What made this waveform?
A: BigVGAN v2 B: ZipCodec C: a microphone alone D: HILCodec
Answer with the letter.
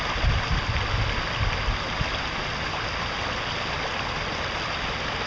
C